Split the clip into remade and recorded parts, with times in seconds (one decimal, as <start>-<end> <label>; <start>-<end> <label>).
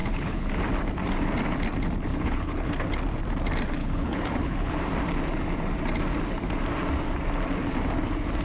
0.0-0.5 remade; 0.5-2.1 recorded; 2.1-2.7 remade; 2.7-3.8 recorded; 3.8-4.7 remade; 4.7-8.4 recorded